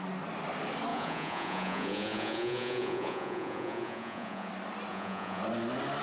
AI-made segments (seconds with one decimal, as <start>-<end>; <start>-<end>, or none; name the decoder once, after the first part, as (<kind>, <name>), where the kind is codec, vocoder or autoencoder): 0.9-4.5 (vocoder, Vocos); 4.9-5.4